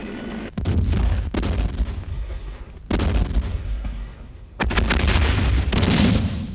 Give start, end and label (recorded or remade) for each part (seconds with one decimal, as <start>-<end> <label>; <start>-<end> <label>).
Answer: 0.0-2.1 recorded; 2.1-2.7 remade; 2.7-3.5 recorded; 3.5-4.6 remade; 4.6-6.5 recorded